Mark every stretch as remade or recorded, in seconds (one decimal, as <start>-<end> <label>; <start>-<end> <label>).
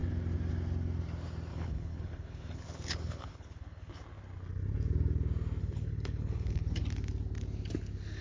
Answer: 0.0-1.5 recorded; 1.5-3.9 remade; 3.9-5.6 recorded; 5.6-6.8 remade; 6.8-8.2 recorded